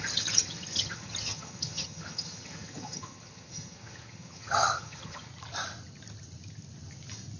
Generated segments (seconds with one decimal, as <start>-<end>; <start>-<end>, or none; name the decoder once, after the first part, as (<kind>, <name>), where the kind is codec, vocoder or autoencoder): 0.0-5.3 (vocoder, HiFi-GAN)